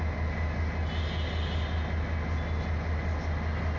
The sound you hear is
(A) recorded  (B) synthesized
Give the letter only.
A